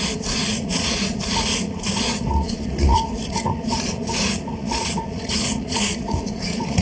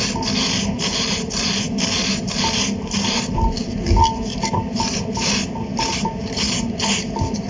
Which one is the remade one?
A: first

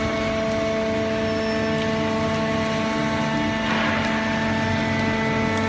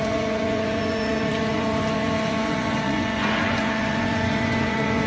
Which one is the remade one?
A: second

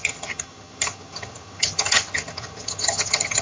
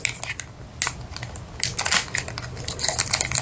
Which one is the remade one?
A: first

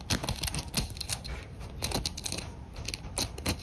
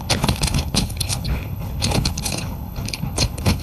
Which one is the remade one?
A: second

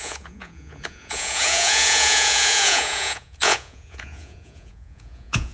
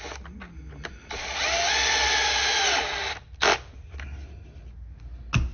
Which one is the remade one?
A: first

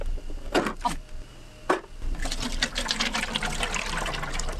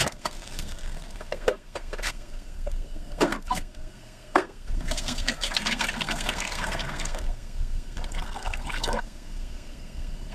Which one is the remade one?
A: second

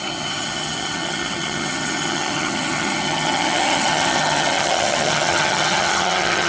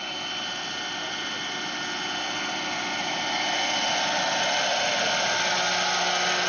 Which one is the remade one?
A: first